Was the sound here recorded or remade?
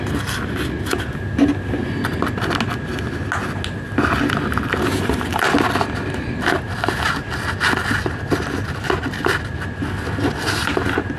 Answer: recorded